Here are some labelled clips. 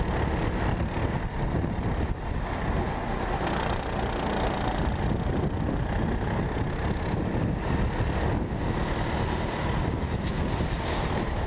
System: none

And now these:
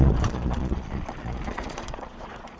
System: vocoder, Vocos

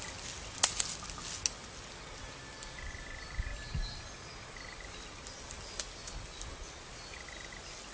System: none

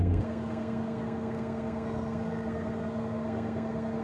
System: codec, SNAC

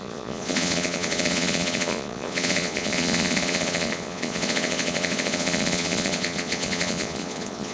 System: vocoder, Vocos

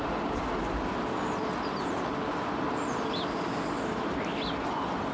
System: none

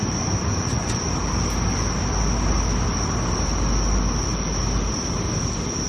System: none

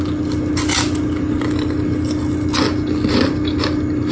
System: none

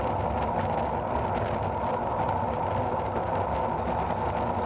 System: none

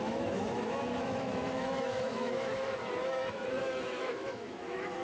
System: autoencoder, DAC-VAE